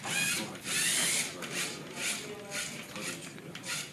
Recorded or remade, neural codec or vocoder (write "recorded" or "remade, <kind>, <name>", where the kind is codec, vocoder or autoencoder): recorded